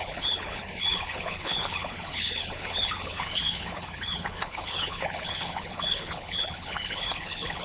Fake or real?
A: fake